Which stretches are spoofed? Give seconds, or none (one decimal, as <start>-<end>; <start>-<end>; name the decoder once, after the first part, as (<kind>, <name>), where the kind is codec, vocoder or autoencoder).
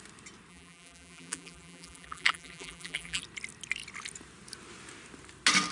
0.5-3.2 (vocoder, BigVGAN v2)